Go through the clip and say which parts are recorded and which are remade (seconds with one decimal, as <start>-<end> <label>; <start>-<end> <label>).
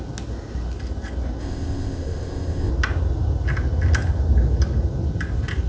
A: 0.0-1.4 recorded; 1.4-2.7 remade; 2.7-5.7 recorded